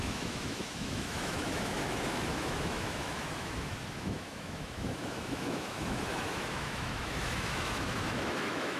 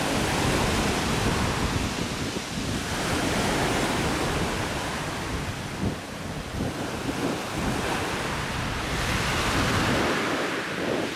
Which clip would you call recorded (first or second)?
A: second